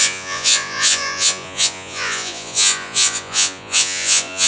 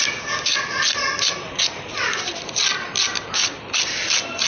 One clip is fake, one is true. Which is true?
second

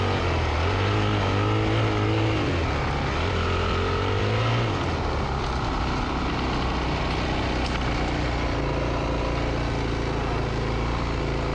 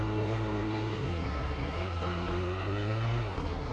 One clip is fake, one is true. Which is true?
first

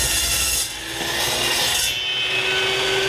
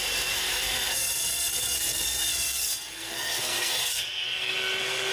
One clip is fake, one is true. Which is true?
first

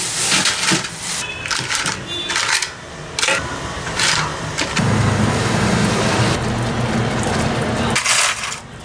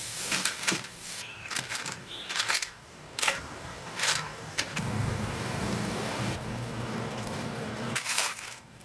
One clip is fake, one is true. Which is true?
first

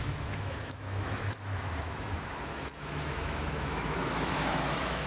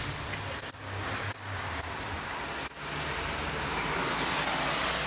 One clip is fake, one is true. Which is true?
second